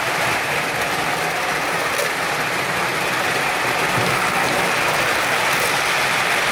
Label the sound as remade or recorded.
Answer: recorded